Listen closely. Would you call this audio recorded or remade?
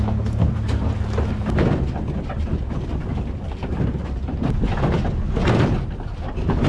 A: recorded